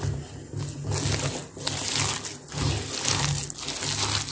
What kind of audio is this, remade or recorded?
recorded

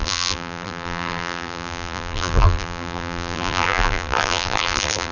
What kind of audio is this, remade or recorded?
remade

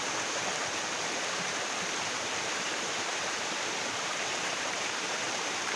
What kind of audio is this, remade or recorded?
remade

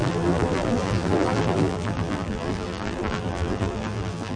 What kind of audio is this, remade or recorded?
remade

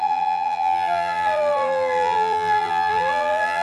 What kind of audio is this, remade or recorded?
remade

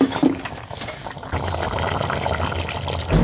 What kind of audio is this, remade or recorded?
recorded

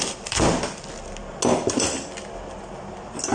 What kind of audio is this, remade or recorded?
recorded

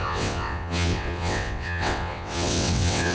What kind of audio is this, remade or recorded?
remade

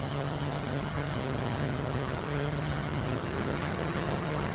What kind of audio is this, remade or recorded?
remade